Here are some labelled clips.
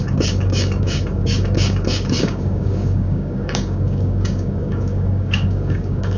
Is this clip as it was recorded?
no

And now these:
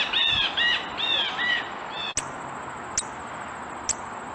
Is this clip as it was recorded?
yes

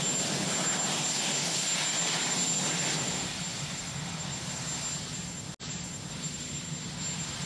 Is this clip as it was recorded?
yes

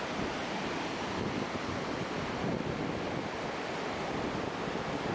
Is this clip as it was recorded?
yes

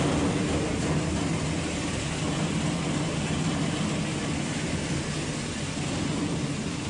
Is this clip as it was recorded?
yes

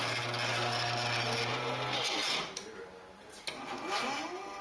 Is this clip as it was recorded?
yes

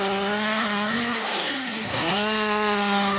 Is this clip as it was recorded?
no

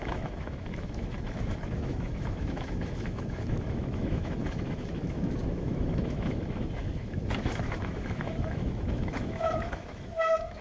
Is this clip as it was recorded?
no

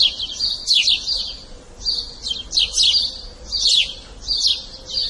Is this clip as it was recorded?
yes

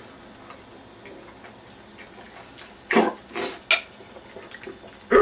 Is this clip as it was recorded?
yes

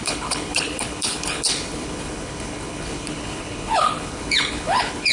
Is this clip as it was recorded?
no